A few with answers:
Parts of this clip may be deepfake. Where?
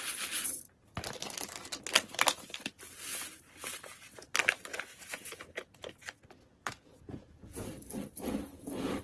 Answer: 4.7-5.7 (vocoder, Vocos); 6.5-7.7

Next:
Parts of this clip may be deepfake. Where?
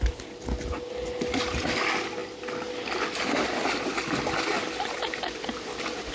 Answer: none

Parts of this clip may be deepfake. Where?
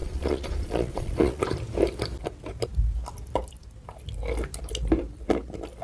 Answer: 0.0-1.4 (vocoder, Vocos)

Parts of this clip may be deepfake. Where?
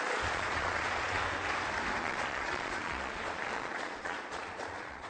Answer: 0.0-1.2 (vocoder, Vocos); 2.0-5.1